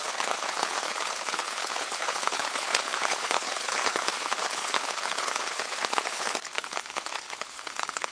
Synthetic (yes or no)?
yes